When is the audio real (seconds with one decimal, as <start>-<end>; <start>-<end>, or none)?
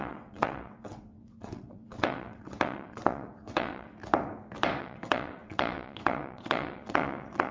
3.9-4.8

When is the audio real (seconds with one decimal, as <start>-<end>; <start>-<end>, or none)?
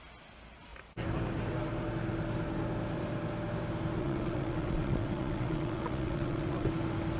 0.0-4.0; 6.7-7.2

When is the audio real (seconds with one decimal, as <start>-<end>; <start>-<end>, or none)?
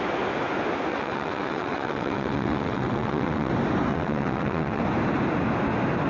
0.0-0.9; 3.5-3.9; 4.8-6.1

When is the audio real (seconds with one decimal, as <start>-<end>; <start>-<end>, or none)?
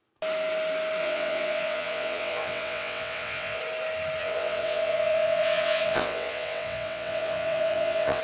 0.0-1.0; 3.6-4.2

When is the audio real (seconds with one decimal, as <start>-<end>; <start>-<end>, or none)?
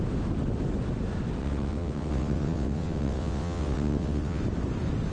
0.0-1.4; 4.4-5.1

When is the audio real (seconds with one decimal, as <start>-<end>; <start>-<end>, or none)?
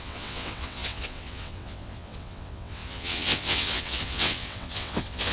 none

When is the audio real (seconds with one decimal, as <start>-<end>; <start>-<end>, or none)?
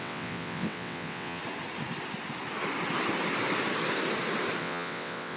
1.4-4.6